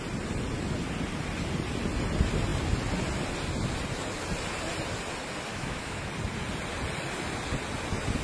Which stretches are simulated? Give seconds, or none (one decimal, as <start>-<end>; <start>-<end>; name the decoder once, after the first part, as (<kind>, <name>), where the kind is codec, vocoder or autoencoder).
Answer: 5.5-6.1 (autoencoder, DAC-VAE)